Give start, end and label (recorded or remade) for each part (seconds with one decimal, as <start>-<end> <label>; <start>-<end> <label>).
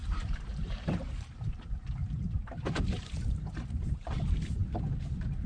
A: 0.0-4.6 remade; 4.6-5.5 recorded